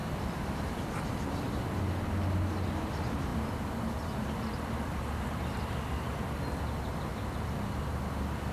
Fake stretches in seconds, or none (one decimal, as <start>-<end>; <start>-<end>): 0.0-1.8; 3.3-6.6